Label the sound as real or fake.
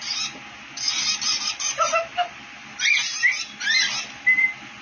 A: real